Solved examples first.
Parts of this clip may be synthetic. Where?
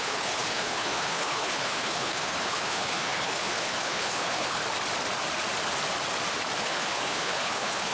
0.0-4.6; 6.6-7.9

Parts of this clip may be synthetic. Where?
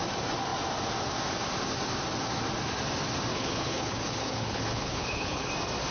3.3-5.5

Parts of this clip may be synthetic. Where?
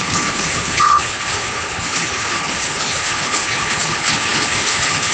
0.0-5.1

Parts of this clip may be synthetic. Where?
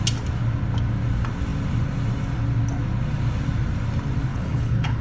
4.3-5.0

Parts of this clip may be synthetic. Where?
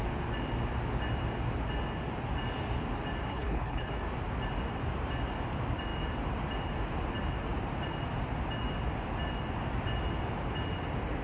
3.3-3.9